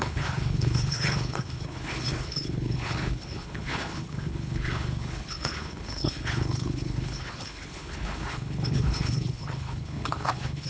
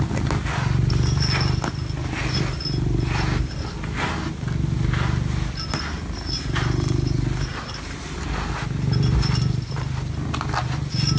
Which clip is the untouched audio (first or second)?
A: second